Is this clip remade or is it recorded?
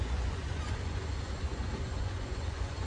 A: remade